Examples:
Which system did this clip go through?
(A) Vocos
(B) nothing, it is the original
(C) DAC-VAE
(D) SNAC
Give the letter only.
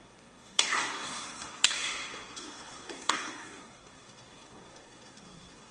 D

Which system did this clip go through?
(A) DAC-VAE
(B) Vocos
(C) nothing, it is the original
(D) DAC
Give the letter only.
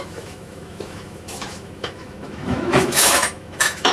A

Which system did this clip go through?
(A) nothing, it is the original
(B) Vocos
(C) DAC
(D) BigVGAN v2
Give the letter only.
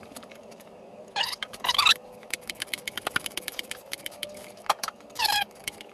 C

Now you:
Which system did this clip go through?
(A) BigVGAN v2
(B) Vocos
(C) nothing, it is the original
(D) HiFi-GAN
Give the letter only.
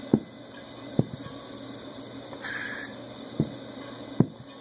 C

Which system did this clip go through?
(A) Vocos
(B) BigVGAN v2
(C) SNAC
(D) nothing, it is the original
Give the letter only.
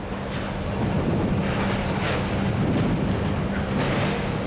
D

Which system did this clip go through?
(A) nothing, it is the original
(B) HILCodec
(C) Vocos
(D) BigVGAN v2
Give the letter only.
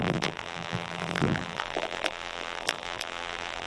D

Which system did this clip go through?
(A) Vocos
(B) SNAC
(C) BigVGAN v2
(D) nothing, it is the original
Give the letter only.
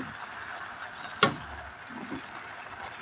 D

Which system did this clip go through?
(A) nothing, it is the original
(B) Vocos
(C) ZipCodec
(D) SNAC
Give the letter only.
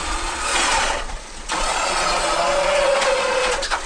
B